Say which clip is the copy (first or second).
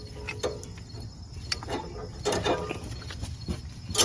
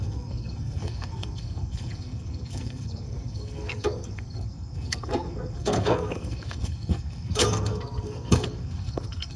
second